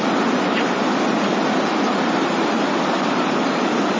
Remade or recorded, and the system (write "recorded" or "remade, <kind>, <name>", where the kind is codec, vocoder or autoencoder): recorded